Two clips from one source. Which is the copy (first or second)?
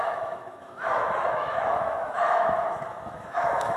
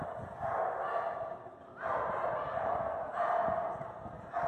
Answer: first